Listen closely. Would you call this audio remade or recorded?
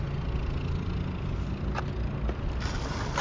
recorded